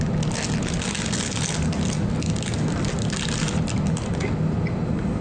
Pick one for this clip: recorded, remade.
recorded